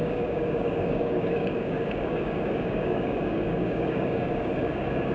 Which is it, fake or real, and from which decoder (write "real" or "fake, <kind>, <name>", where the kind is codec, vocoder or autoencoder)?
fake, codec, DAC